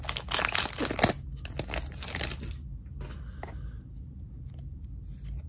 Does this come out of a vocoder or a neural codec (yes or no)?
no